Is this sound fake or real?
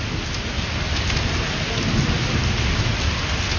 real